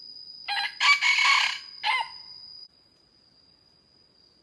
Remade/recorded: recorded